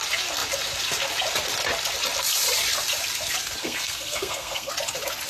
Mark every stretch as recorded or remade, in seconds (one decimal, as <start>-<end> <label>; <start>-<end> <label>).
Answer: 0.0-3.6 recorded; 3.6-4.7 remade; 4.7-5.3 recorded